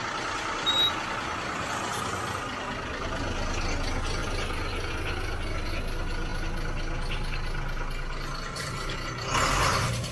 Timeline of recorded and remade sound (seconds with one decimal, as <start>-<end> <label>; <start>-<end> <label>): 0.0-4.2 recorded; 4.2-4.9 remade; 4.9-10.1 recorded